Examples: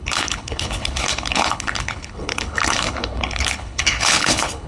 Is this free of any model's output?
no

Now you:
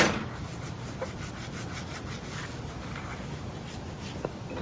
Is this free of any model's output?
yes